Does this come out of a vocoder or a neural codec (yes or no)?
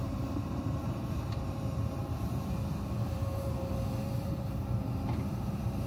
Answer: yes